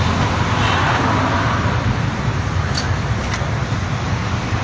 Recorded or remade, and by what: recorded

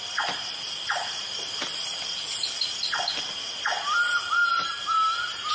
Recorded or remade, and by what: recorded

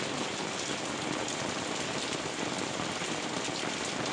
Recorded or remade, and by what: recorded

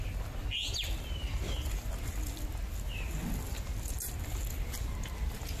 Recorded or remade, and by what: recorded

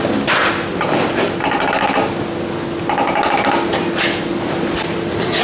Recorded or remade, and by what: recorded